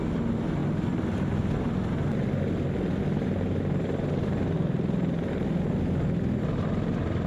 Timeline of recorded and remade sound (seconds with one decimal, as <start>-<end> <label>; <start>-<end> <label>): 0.0-7.3 recorded

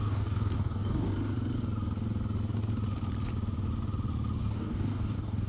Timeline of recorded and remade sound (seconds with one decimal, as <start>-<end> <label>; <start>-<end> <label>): 0.0-1.1 remade; 1.1-4.4 recorded; 4.4-5.5 remade

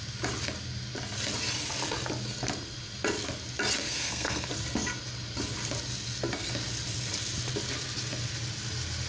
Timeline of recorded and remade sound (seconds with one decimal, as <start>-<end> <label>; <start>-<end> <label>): 0.0-3.8 recorded; 3.8-4.5 remade; 4.5-9.1 recorded

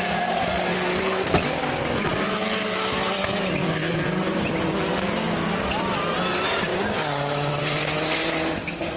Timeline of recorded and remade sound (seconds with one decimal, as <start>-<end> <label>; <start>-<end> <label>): 0.0-3.8 recorded; 3.8-4.6 remade; 4.6-9.0 recorded

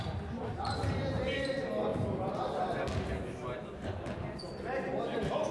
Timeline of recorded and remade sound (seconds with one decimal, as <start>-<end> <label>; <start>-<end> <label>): 0.0-5.5 recorded

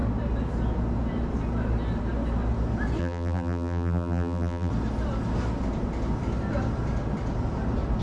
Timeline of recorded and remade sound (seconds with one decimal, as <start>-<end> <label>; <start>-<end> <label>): 0.0-3.0 recorded; 3.0-4.7 remade; 4.7-8.0 recorded